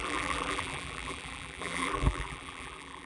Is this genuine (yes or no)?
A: no